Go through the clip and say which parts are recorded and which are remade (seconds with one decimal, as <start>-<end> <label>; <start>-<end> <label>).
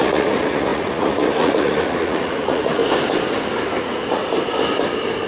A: 0.0-2.8 remade; 2.8-3.8 recorded; 3.8-4.2 remade; 4.2-5.3 recorded